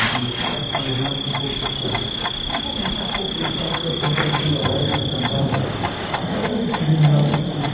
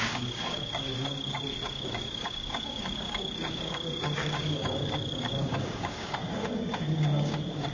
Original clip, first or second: first